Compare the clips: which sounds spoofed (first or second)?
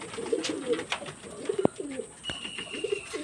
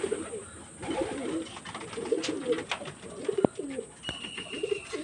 first